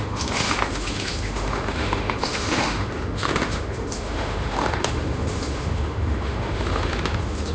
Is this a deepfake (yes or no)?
yes